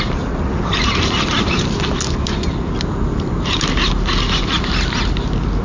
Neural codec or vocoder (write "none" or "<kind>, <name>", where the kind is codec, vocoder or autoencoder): none